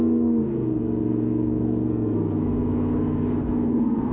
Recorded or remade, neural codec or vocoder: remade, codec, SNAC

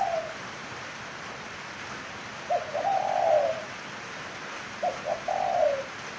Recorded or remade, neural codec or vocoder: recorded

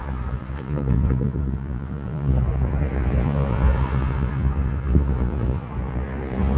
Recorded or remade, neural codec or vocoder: remade, vocoder, Vocos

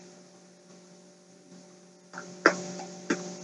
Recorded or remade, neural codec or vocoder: recorded